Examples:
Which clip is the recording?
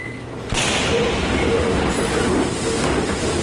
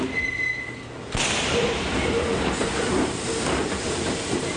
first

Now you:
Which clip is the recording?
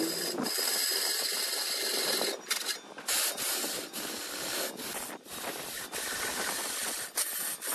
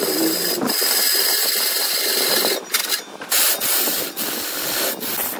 first